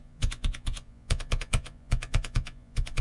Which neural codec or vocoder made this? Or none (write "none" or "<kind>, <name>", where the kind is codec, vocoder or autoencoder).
vocoder, Vocos